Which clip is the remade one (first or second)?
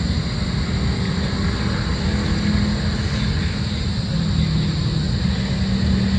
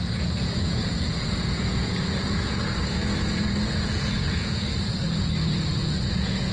second